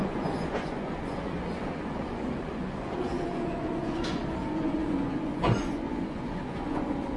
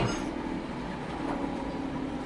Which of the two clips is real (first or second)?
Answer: second